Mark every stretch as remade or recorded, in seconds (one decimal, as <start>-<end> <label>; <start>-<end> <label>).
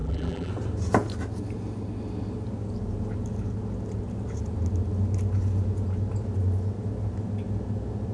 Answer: 0.0-0.5 remade; 0.5-8.1 recorded